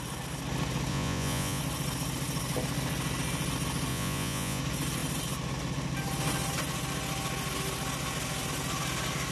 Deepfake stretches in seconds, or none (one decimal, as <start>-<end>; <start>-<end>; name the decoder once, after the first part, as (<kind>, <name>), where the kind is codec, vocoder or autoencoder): 0.9-1.6 (vocoder, Vocos); 3.9-4.6